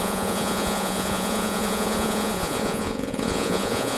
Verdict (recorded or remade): remade